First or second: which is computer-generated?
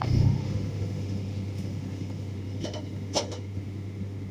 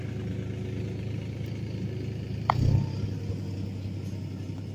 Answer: first